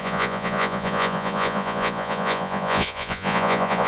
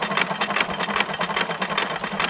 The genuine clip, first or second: second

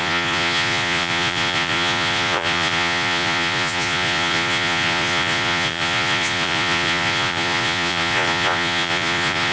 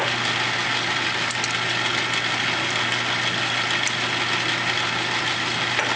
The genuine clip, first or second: second